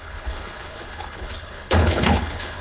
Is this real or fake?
fake